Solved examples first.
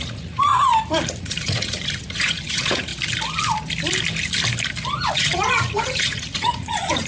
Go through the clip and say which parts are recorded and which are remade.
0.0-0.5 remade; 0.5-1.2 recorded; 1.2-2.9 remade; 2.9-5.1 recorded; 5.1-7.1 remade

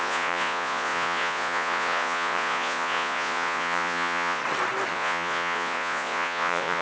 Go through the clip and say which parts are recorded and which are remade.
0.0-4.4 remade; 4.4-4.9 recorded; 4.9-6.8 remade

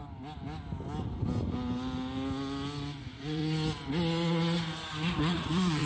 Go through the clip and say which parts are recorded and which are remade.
0.0-3.0 recorded; 3.0-3.4 remade; 3.4-5.2 recorded; 5.2-5.9 remade

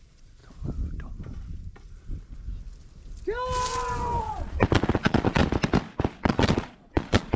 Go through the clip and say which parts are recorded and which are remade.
0.0-0.4 remade; 0.4-4.2 recorded; 4.2-5.4 remade; 5.4-6.2 recorded; 6.2-7.4 remade